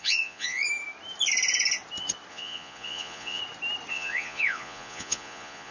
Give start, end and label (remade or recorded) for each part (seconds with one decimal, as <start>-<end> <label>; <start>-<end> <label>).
0.0-0.6 remade; 0.6-2.3 recorded; 2.3-3.4 remade; 3.4-3.9 recorded; 3.9-5.7 remade